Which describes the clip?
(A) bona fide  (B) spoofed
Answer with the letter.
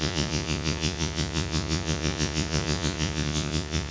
B